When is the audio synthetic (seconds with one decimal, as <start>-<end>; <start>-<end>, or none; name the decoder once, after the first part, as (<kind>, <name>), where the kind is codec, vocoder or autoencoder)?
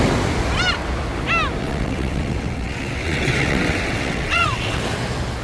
1.6-4.8 (vocoder, WaveNeXt)